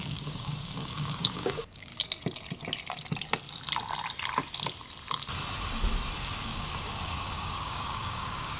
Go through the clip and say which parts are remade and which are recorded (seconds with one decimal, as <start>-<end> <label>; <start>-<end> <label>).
0.0-1.9 remade; 1.9-6.2 recorded; 6.2-8.6 remade